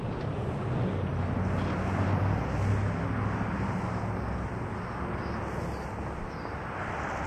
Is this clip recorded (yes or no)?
yes